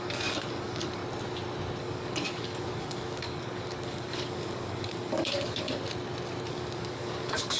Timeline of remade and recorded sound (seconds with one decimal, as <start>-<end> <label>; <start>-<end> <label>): 0.0-1.0 remade; 1.0-1.8 recorded; 1.8-5.8 remade; 5.8-6.5 recorded; 6.5-7.6 remade